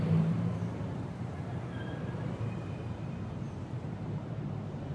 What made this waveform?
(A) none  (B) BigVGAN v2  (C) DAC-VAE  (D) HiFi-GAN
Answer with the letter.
B